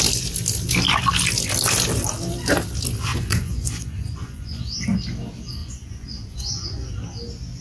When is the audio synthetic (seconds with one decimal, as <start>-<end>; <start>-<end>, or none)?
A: 3.1-4.6; 5.6-6.9